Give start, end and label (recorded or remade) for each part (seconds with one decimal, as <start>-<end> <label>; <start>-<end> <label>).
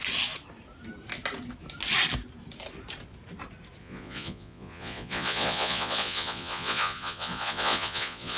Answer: 0.0-3.8 recorded; 3.8-8.4 remade